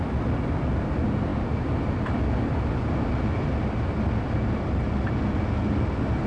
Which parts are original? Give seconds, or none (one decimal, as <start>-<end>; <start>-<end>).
0.0-6.3